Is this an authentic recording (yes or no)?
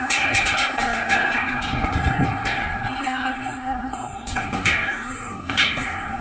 no